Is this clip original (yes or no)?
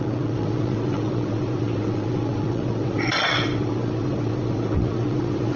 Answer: no